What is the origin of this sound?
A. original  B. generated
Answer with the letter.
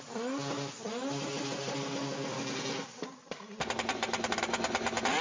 A